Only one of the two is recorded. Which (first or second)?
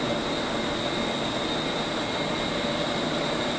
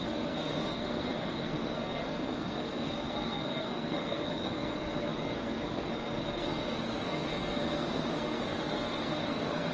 first